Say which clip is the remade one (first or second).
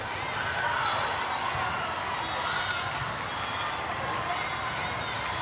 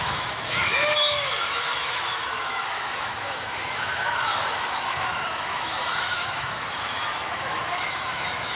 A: second